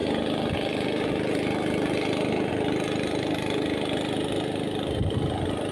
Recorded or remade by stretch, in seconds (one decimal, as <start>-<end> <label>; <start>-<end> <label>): 0.0-5.7 recorded